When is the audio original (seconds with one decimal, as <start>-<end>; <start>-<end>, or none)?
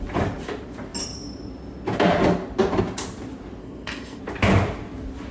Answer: 0.0-3.6; 4.2-5.3